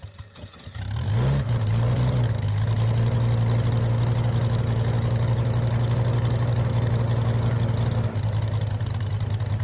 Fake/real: real